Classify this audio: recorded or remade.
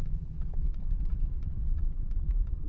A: remade